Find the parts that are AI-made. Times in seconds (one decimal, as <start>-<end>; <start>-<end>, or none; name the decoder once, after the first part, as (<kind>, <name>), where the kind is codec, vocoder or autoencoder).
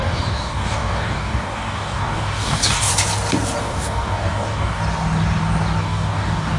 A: 0.0-2.9 (codec, DAC); 3.6-4.8; 5.8-6.6